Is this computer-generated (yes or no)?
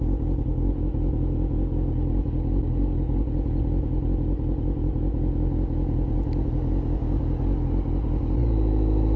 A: no